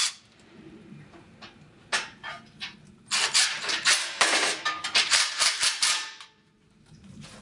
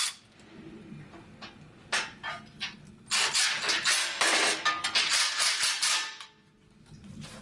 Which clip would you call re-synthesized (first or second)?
first